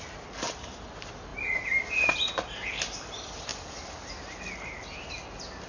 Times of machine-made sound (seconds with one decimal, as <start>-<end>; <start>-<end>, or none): none